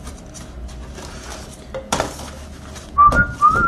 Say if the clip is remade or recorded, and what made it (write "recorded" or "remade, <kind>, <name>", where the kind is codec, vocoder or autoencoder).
recorded